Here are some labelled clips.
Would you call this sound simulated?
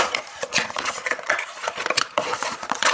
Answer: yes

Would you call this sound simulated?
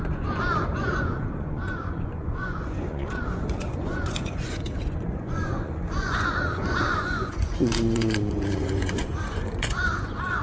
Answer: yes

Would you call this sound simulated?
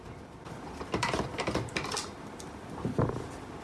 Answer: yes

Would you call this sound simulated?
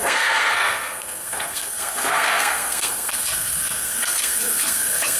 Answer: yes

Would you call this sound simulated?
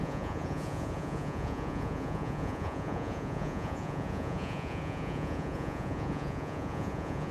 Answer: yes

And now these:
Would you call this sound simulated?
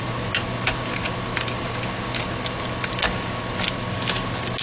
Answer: no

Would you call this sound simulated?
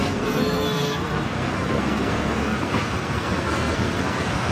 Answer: yes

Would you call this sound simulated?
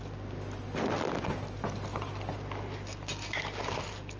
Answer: no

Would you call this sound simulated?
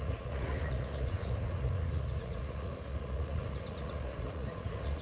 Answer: yes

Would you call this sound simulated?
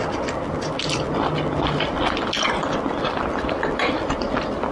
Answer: no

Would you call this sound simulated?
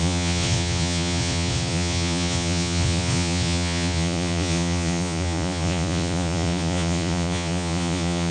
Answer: yes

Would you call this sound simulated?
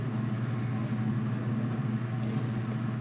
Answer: no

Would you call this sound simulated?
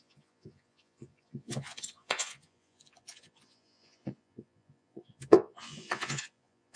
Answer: yes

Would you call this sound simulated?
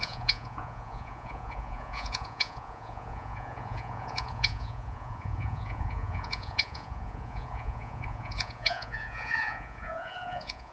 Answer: yes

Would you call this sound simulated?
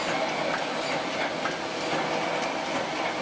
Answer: no